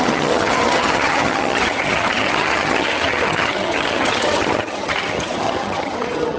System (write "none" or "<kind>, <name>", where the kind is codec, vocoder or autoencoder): vocoder, HiFi-GAN